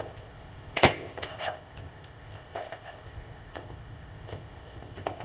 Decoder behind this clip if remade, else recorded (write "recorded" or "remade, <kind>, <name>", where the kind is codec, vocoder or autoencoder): remade, codec, ZipCodec